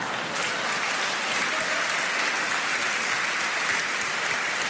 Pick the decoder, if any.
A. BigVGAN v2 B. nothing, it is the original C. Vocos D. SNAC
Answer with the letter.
B